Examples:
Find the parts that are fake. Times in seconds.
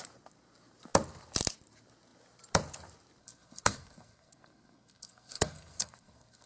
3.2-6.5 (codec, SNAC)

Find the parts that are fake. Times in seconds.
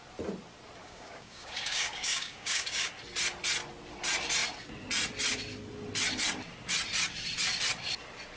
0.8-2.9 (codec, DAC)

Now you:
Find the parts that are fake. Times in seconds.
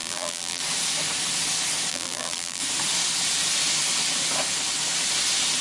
0.0-0.6 (vocoder, BigVGAN v2); 1.9-2.6